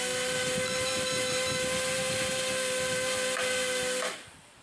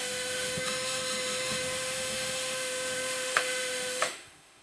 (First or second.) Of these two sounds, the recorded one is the first